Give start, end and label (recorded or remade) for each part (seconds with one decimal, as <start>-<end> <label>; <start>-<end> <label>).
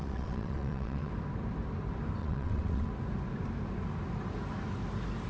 0.0-1.1 remade; 1.1-2.2 recorded; 2.2-2.9 remade; 2.9-5.3 recorded